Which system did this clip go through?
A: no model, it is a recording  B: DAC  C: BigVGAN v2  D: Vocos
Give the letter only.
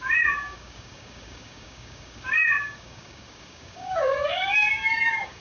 B